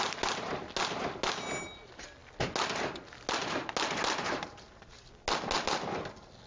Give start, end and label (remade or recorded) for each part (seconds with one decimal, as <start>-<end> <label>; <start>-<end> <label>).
0.0-6.5 recorded